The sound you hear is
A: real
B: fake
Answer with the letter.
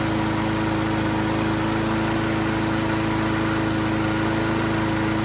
A